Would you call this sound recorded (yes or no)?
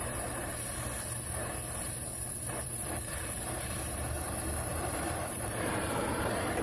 no